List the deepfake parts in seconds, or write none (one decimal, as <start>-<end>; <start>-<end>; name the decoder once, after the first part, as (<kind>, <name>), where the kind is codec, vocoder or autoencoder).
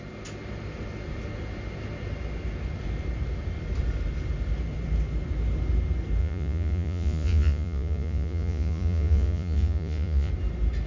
6.2-10.3 (vocoder, Vocos)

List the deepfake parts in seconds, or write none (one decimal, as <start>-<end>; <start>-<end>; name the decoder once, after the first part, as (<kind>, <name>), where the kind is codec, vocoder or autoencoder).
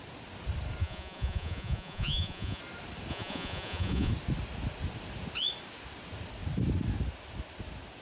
0.8-2.6 (vocoder, Vocos); 3.1-4.1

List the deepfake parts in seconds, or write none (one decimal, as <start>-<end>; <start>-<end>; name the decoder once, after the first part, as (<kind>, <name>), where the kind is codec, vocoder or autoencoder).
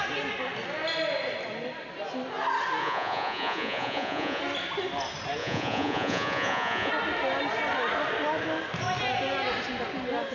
2.8-4.4 (vocoder, Vocos); 5.4-6.9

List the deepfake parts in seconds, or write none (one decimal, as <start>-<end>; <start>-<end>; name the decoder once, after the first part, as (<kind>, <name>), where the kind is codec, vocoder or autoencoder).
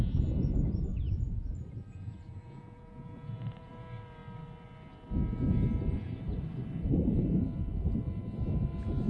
0.9-3.7 (vocoder, Vocos)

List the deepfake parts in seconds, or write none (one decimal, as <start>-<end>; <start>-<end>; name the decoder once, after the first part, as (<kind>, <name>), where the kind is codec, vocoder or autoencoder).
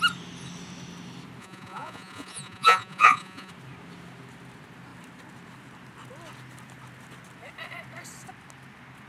1.4-3.5 (vocoder, Vocos)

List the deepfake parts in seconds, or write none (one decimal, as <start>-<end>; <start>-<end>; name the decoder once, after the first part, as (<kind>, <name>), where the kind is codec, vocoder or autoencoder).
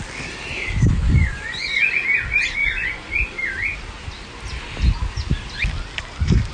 1.0-1.9 (vocoder, Vocos); 2.6-3.1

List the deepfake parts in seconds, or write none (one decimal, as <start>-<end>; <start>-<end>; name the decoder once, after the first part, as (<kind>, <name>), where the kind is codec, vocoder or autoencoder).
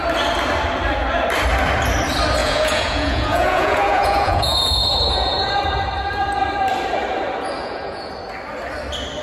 2.4-5.5 (vocoder, Vocos); 7.6-8.1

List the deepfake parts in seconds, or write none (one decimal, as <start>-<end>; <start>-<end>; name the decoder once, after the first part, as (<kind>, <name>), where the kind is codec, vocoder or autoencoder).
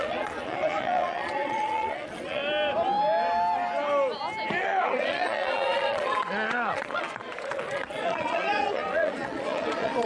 0.0-2.4 (vocoder, Vocos); 4.6-10.1